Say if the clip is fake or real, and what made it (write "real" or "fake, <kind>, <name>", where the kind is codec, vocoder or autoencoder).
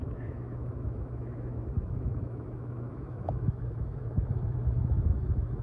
fake, autoencoder, DAC-VAE